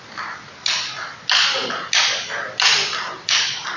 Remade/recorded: recorded